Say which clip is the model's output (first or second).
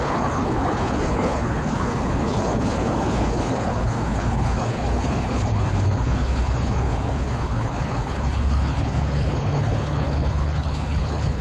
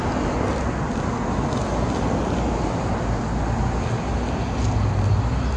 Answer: first